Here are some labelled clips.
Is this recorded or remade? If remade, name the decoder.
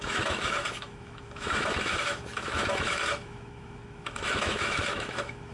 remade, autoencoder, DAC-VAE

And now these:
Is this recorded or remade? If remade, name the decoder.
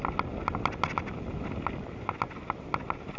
recorded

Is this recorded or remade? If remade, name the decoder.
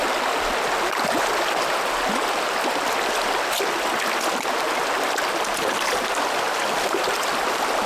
recorded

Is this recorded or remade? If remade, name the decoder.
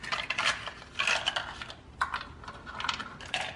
recorded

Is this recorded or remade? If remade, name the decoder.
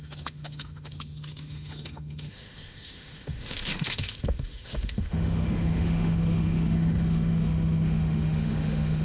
remade, autoencoder, DAC-VAE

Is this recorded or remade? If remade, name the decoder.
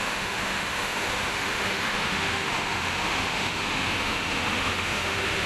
remade, autoencoder, DAC-VAE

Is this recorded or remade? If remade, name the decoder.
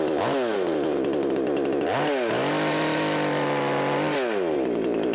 recorded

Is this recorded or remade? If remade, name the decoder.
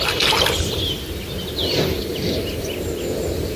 recorded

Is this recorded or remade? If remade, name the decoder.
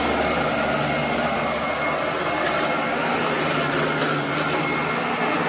recorded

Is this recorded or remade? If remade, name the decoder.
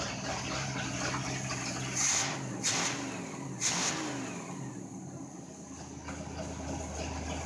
recorded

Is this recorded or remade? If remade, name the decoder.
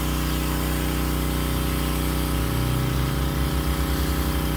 recorded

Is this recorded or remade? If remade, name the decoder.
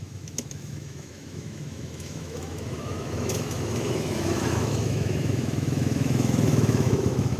remade, autoencoder, DAC-VAE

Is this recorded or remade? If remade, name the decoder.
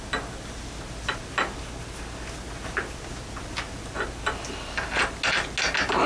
recorded